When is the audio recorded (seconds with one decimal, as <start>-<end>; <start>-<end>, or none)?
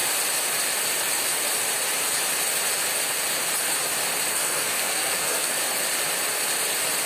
0.0-4.3; 5.6-7.1